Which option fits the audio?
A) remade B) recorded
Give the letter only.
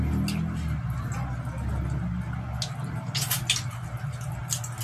B